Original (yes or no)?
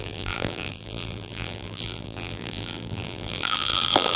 no